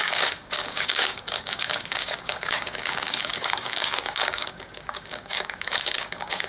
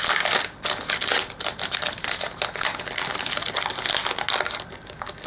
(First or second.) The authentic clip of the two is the second